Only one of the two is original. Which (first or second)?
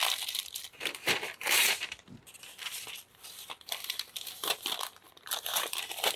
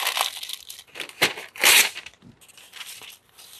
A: second